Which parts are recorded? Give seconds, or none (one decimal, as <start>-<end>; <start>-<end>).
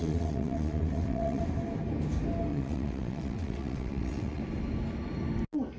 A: 1.4-2.5; 4.4-5.8